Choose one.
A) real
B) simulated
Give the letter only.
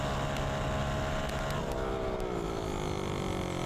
A